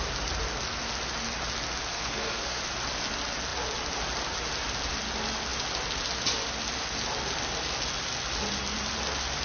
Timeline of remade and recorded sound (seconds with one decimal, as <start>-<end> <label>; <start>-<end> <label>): 0.0-1.9 recorded; 1.9-2.6 remade; 2.6-9.4 recorded